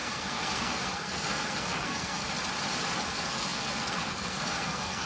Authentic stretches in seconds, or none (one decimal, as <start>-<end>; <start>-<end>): 2.2-3.1